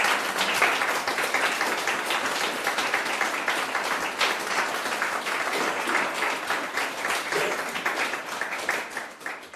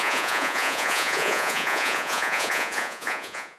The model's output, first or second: second